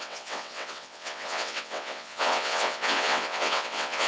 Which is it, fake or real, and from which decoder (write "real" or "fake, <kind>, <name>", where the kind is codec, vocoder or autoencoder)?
fake, vocoder, WaveNeXt